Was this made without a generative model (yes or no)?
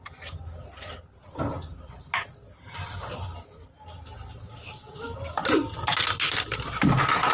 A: yes